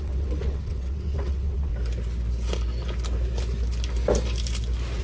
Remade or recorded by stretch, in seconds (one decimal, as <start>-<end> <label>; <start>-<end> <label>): 0.0-1.7 remade; 1.7-5.0 recorded